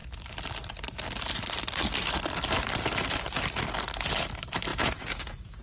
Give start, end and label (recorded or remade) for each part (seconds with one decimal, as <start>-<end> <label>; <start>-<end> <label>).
0.0-4.7 recorded; 4.7-5.6 remade